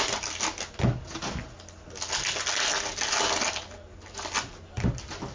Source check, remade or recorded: recorded